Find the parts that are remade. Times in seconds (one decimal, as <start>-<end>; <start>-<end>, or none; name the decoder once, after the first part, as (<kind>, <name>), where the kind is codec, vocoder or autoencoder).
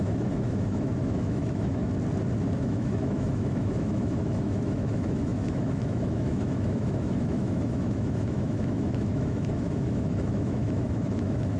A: 0.0-1.8 (autoencoder, DAC-VAE); 2.6-11.6